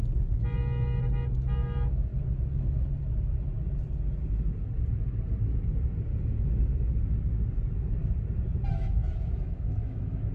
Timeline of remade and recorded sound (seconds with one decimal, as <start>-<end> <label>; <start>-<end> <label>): 0.0-8.7 recorded; 8.7-10.3 remade